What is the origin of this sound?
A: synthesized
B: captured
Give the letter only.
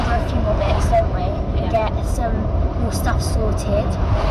A